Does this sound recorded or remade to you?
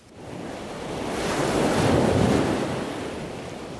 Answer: recorded